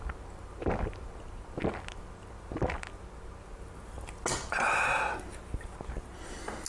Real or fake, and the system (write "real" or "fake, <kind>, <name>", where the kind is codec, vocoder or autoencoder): real